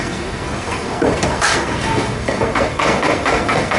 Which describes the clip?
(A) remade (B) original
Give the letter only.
A